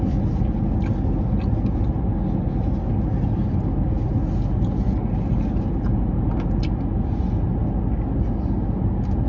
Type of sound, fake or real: real